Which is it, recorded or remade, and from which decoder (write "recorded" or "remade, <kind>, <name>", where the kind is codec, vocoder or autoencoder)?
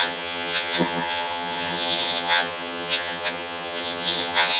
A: remade, vocoder, HiFi-GAN